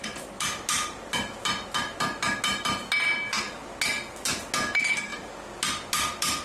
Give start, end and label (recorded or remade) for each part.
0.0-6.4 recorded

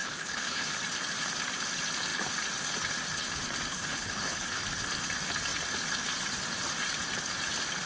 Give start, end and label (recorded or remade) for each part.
0.0-0.7 remade; 0.7-3.7 recorded; 3.7-4.6 remade; 4.6-7.9 recorded

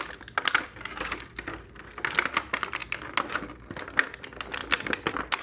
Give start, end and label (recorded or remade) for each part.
0.0-5.4 recorded

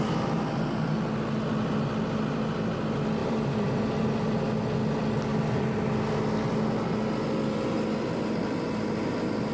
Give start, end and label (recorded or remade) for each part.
0.0-3.2 recorded; 3.2-3.8 remade; 3.8-5.3 recorded; 5.3-5.9 remade; 5.9-9.5 recorded

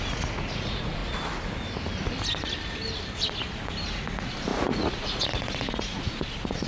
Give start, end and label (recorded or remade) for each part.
0.0-1.0 remade; 1.0-3.9 recorded; 3.9-6.7 remade